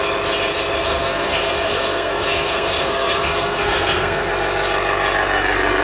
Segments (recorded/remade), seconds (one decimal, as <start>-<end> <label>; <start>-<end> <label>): 0.0-0.8 recorded; 0.8-4.3 remade; 4.3-5.8 recorded